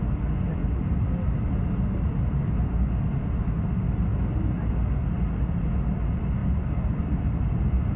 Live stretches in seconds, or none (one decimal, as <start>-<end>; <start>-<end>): 0.0-8.0